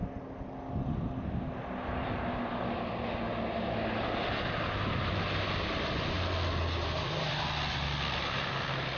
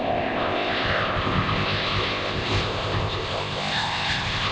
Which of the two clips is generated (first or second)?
second